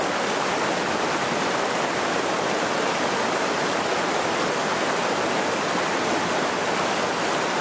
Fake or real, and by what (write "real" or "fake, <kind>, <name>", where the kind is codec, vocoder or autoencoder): real